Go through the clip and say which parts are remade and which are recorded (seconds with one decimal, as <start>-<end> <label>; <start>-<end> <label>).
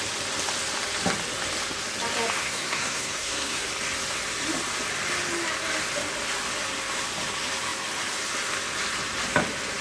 0.0-2.4 recorded; 2.4-3.7 remade; 3.7-9.8 recorded